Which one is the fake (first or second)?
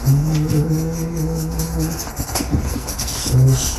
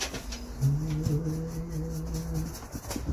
first